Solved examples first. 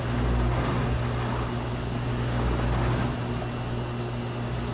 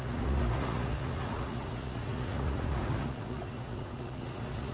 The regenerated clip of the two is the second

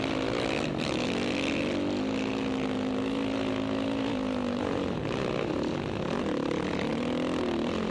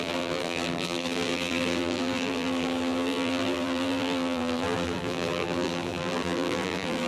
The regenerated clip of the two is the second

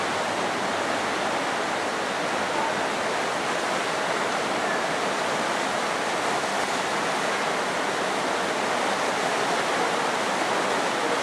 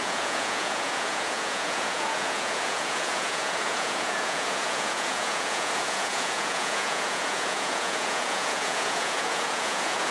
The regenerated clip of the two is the second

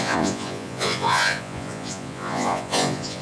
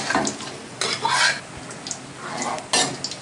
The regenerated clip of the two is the first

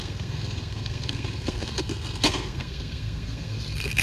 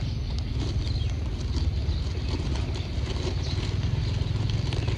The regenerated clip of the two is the first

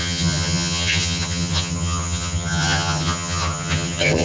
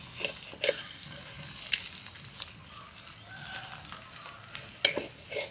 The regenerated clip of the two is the first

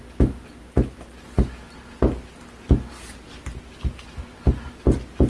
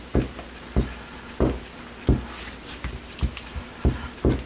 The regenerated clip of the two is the second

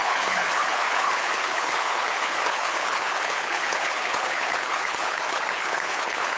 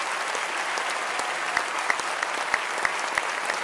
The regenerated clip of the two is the first